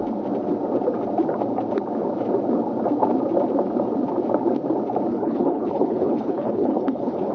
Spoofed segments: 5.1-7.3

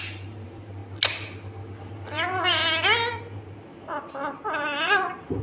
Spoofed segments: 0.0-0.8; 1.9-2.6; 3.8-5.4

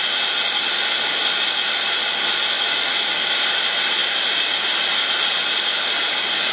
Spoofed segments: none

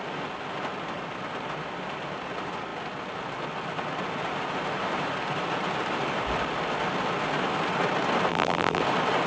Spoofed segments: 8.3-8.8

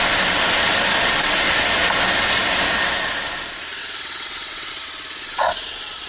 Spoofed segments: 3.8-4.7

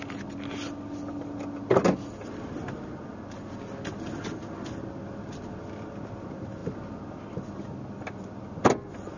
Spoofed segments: none

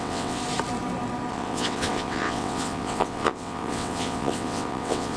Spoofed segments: 0.0-0.4; 1.3-5.2

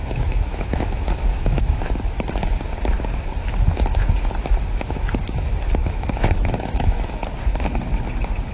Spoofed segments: 0.0-1.9; 5.8-7.1